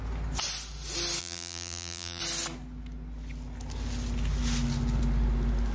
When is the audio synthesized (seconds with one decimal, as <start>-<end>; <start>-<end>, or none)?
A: 1.2-2.2